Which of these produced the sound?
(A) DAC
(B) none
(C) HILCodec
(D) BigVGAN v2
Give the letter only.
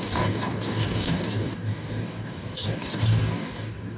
A